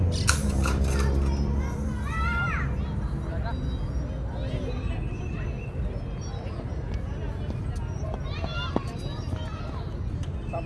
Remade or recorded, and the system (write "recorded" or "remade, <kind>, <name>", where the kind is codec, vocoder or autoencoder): recorded